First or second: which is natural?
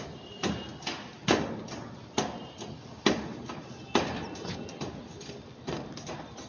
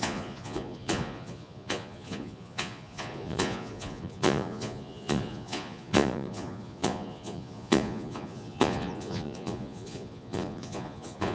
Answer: first